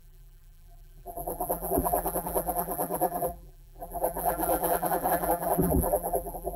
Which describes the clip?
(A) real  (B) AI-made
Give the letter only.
B